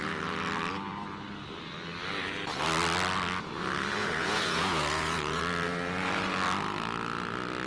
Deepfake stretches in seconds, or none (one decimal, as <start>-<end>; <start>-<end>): 4.0-5.4